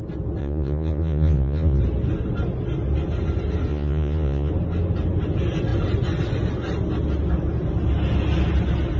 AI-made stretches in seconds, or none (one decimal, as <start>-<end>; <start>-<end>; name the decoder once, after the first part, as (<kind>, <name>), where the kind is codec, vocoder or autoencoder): 0.4-1.8 (vocoder, Vocos); 3.7-4.5

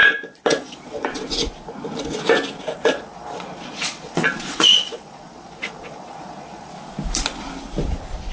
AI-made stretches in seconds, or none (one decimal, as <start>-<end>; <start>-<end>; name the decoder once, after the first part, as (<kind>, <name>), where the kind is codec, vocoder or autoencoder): 0.0-1.3 (vocoder, Vocos); 2.8-6.7

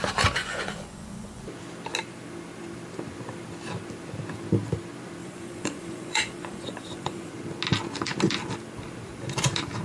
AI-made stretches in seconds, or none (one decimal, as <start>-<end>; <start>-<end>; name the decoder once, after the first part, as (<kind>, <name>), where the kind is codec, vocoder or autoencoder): 0.4-1.4 (vocoder, Vocos); 5.2-7.3

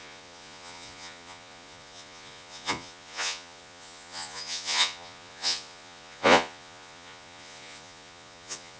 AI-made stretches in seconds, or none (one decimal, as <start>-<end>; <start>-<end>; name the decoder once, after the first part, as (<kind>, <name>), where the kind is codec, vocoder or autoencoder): 0.0-8.8 (vocoder, Vocos)

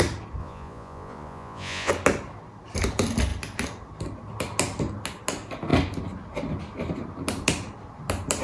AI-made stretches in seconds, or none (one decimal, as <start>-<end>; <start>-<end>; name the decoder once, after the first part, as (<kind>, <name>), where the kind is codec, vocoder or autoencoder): 0.4-1.9 (vocoder, Vocos)

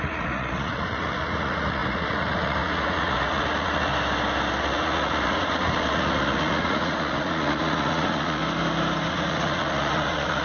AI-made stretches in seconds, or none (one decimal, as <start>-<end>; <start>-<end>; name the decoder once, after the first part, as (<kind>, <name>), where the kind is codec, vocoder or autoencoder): 0.0-3.9 (vocoder, Vocos); 4.6-8.4; 9.1-10.4